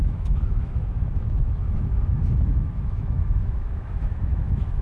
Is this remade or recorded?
remade